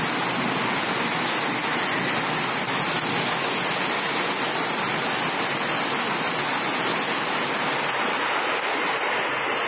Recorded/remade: recorded